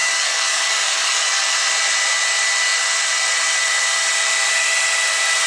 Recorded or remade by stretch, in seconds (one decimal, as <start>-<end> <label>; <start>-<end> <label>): 0.0-1.5 remade; 1.5-5.5 recorded